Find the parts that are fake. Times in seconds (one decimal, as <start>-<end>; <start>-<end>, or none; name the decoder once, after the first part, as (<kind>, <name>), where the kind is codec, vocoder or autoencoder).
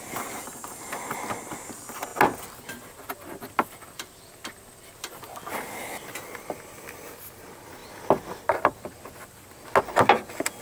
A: none